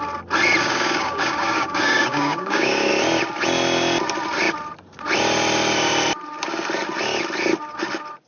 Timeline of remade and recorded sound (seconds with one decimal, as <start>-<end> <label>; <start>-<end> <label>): 0.0-0.6 recorded; 0.6-2.9 remade; 2.9-8.3 recorded